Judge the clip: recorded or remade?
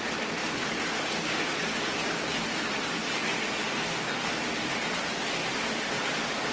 recorded